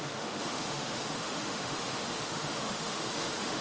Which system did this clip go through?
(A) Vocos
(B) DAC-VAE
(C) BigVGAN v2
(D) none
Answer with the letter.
B